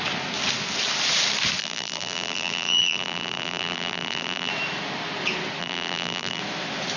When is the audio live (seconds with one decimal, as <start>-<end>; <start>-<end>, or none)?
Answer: 0.0-1.6; 4.5-5.6; 6.4-7.0